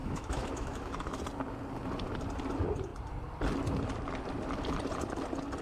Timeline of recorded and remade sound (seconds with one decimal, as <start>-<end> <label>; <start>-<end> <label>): 0.0-1.2 remade; 1.2-5.6 recorded